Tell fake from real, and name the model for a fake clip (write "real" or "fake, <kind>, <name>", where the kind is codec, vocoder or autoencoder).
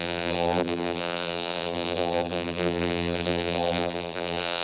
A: fake, vocoder, BigVGAN v2